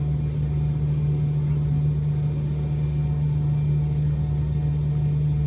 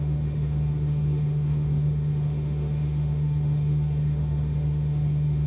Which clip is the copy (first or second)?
second